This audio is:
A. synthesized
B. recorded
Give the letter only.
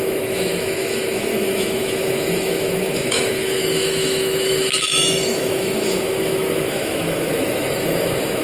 A